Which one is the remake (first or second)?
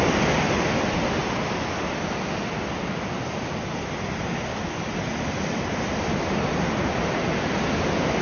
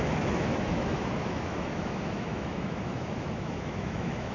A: second